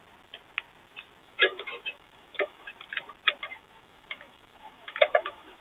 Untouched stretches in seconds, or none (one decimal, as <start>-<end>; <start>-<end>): 0.0-1.2; 2.7-3.5